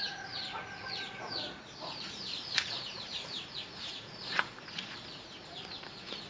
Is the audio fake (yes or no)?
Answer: yes